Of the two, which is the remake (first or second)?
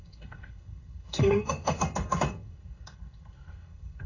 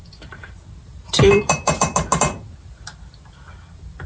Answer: first